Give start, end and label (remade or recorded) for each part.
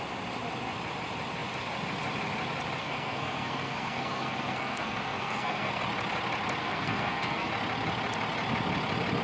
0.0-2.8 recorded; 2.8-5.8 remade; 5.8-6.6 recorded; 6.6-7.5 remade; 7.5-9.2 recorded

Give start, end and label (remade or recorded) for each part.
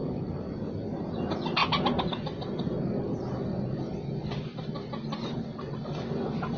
0.0-0.6 remade; 0.6-6.6 recorded